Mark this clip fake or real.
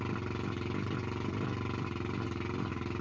real